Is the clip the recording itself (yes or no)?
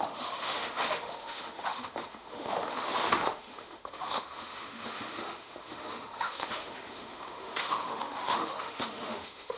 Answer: no